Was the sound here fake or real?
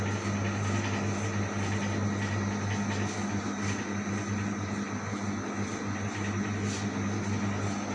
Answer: real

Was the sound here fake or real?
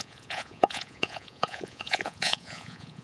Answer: fake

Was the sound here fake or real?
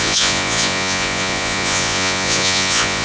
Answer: fake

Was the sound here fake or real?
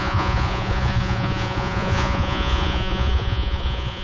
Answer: fake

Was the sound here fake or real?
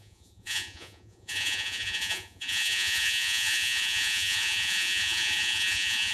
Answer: fake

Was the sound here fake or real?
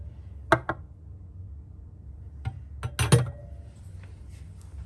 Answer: real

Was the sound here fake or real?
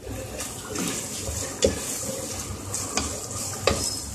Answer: real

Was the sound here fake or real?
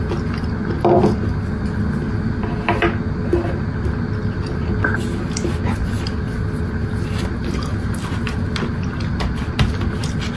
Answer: real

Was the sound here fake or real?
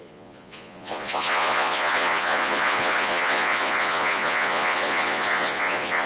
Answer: fake